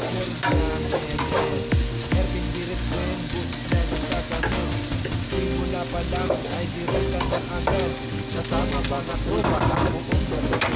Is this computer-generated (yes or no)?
no